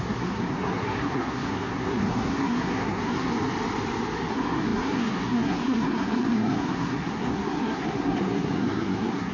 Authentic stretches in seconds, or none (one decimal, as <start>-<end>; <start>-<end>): 3.3-4.3